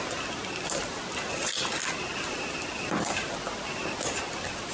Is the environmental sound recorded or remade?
recorded